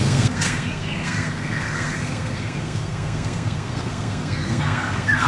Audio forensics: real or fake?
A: fake